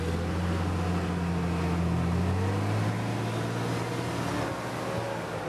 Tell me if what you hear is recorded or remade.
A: recorded